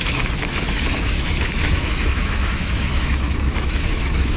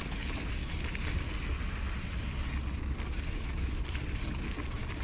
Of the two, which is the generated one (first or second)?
first